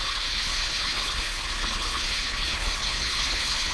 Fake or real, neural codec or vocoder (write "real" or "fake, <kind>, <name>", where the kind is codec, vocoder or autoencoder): fake, codec, HILCodec